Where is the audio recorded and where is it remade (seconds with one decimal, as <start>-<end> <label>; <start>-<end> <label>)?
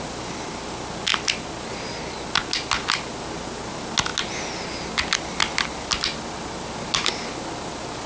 0.0-8.1 recorded